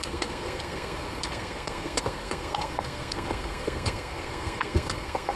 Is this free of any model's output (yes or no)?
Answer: no